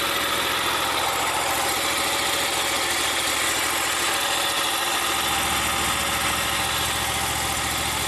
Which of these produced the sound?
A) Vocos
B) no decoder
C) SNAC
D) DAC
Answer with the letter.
B